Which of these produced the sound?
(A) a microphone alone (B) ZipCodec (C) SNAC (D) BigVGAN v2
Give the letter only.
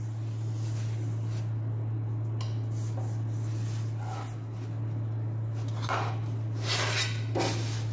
A